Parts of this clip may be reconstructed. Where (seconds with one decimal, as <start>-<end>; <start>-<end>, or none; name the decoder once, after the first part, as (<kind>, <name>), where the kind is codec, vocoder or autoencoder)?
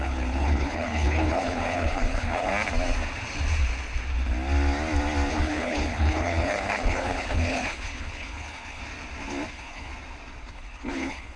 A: 0.0-2.5 (codec, HILCodec); 5.3-8.8; 9.5-9.9; 10.5-11.4